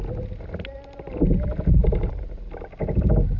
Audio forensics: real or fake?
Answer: real